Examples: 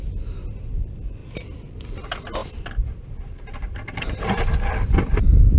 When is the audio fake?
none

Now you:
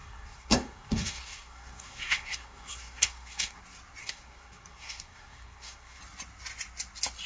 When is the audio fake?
0.0-3.6 (codec, SNAC); 4.0-6.0

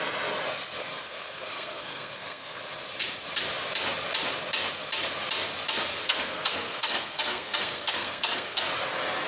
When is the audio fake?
0.8-2.6 (codec, SNAC); 5.9-8.6